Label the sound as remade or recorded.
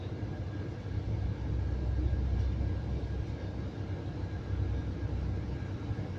recorded